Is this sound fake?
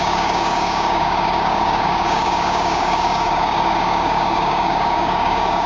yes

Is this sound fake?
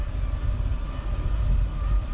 no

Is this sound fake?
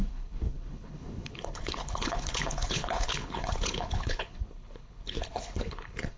yes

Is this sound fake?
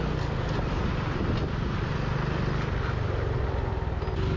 no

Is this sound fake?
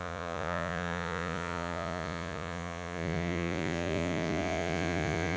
yes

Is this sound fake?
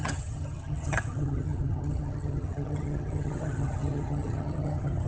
yes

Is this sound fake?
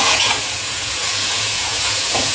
yes